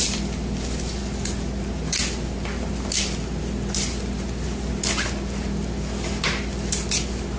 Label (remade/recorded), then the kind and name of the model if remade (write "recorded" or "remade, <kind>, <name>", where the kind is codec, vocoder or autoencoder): recorded